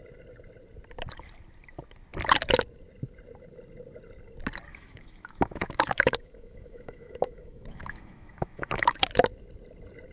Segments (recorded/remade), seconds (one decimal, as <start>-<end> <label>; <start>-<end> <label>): 0.0-4.7 recorded; 4.7-9.0 remade; 9.0-10.1 recorded